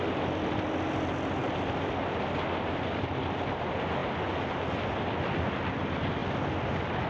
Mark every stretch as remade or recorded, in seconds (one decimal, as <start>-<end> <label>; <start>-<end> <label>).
0.0-7.1 recorded